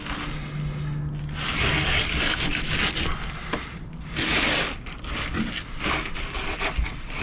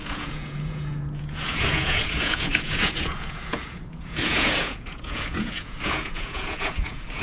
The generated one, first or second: second